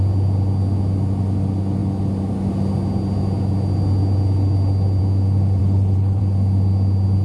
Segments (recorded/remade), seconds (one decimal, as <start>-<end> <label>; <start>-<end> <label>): 0.0-5.6 recorded; 5.6-6.2 remade; 6.2-7.2 recorded